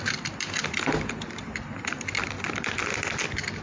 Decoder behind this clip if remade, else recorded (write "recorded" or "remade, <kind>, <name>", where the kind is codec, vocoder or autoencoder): recorded